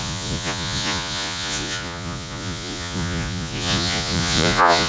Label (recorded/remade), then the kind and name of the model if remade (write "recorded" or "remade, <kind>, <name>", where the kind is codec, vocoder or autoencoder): remade, vocoder, Vocos